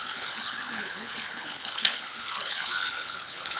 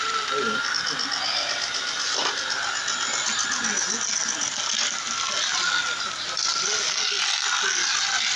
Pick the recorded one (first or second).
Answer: second